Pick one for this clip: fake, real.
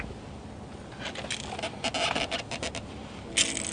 real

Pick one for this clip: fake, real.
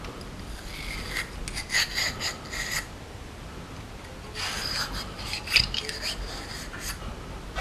real